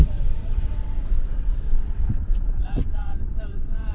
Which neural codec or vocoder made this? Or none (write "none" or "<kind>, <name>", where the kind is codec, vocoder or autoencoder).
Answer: vocoder, WaveNeXt